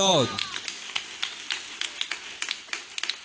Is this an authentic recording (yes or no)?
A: yes